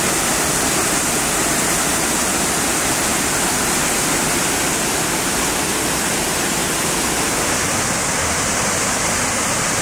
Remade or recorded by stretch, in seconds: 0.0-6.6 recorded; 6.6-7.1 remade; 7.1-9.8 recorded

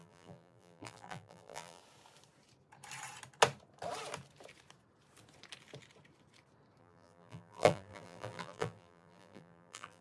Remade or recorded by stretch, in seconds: 0.0-1.8 remade; 1.8-6.8 recorded; 6.8-10.0 remade

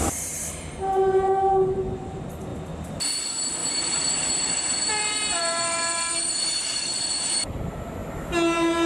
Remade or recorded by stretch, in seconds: 0.0-2.5 remade; 2.5-3.1 recorded; 3.1-8.0 remade; 8.0-8.9 recorded

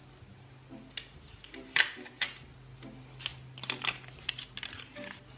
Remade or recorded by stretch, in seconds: 0.0-5.4 recorded

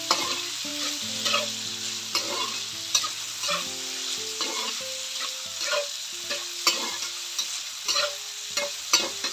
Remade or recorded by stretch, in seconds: 0.0-9.3 recorded

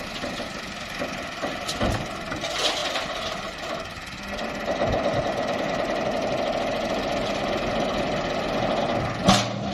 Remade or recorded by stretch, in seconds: 0.0-9.7 recorded

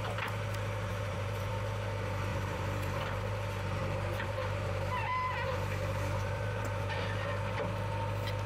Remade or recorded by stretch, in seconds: 0.0-0.9 recorded; 0.9-1.5 remade; 1.5-2.3 recorded; 2.3-3.0 remade; 3.0-3.8 recorded; 3.8-7.0 remade; 7.0-8.5 recorded